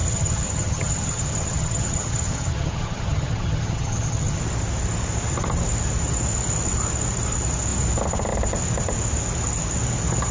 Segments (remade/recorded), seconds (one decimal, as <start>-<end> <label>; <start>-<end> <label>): 0.0-4.4 remade; 4.4-10.3 recorded